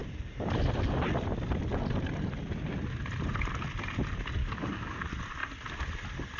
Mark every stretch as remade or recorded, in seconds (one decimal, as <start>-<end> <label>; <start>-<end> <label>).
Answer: 0.0-4.4 recorded; 4.4-5.0 remade; 5.0-6.4 recorded